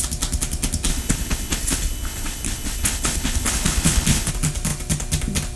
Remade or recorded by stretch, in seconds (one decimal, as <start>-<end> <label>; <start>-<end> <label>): 0.0-0.9 recorded; 0.9-4.3 remade; 4.3-5.6 recorded